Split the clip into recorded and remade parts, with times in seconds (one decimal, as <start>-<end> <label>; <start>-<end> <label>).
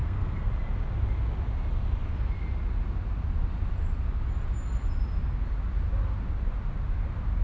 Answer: 0.0-0.5 remade; 0.5-7.4 recorded